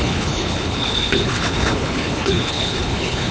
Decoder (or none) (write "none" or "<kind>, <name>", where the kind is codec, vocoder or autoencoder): codec, HILCodec